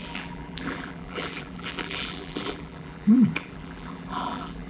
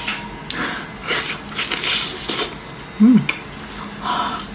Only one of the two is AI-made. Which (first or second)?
first